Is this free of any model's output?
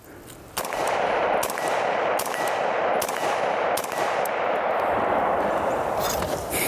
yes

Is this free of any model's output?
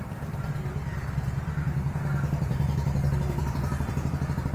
no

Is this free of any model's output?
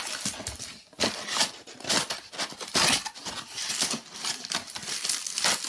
yes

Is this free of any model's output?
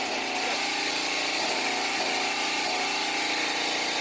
yes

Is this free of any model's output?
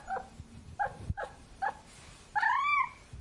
no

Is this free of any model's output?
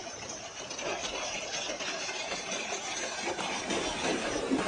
no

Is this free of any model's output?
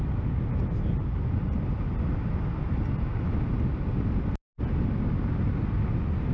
yes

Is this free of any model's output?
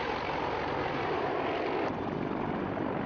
yes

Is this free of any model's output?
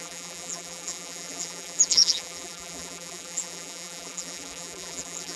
no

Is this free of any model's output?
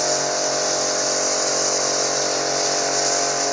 no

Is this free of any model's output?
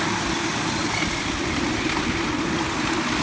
yes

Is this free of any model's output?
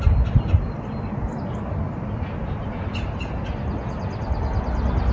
yes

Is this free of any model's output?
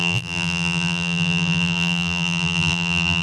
no